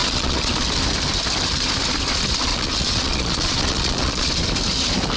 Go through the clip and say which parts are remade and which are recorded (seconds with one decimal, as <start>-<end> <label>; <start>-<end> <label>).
0.0-0.5 remade; 0.5-2.5 recorded; 2.5-4.3 remade; 4.3-5.2 recorded